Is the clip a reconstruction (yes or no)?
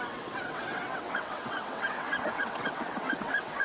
yes